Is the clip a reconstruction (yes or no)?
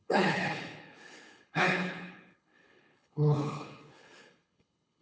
yes